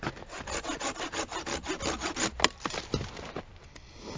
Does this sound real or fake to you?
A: real